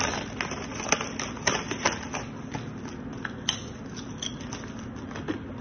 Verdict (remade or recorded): recorded